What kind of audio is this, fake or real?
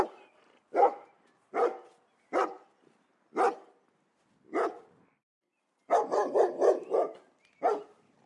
real